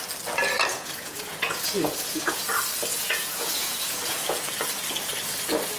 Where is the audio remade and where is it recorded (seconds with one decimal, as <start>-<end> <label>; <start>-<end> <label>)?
0.0-0.7 recorded; 0.7-2.4 remade; 2.4-2.9 recorded; 2.9-4.4 remade; 4.4-5.8 recorded